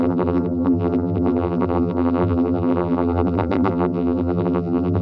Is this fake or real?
fake